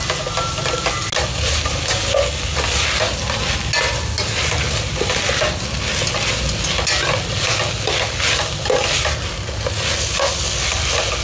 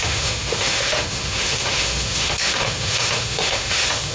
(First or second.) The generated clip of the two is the second